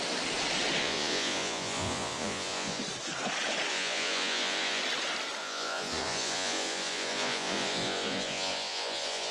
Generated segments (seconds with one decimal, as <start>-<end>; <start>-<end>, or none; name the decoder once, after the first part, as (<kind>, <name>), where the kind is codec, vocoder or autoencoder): 0.8-2.8 (vocoder, Vocos); 3.7-4.8; 5.4-9.3